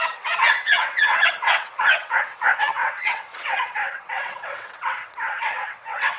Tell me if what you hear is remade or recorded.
remade